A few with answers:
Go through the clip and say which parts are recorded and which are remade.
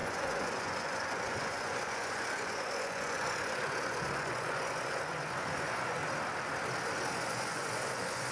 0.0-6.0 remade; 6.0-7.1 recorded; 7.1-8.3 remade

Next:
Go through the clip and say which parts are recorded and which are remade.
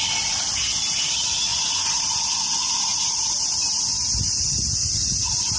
0.0-1.5 recorded; 1.5-2.0 remade; 2.0-5.6 recorded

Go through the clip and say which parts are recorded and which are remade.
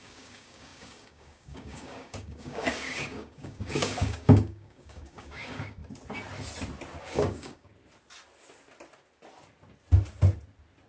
0.0-5.8 remade; 5.8-7.0 recorded; 7.0-7.7 remade; 7.7-10.9 recorded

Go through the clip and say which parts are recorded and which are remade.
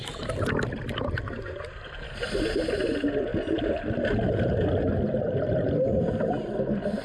0.0-7.0 recorded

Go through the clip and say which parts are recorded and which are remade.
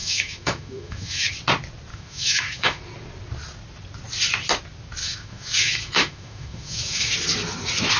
0.0-1.3 remade; 1.3-1.9 recorded; 1.9-2.8 remade; 2.8-5.0 recorded; 5.0-7.1 remade; 7.1-8.0 recorded